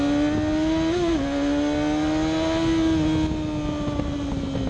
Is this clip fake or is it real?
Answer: real